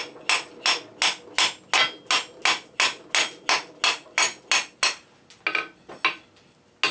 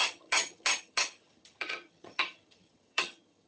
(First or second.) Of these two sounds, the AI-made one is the second